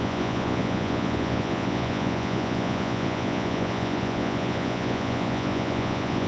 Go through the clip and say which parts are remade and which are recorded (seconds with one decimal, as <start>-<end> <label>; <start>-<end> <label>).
0.0-6.3 remade